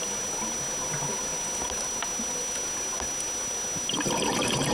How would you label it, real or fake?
real